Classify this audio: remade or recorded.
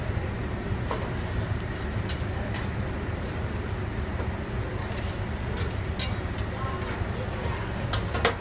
recorded